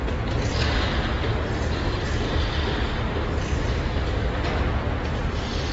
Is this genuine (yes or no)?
yes